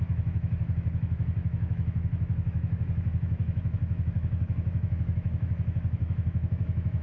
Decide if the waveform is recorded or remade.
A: remade